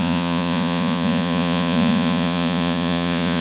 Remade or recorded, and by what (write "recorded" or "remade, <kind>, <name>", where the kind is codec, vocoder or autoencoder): remade, vocoder, Vocos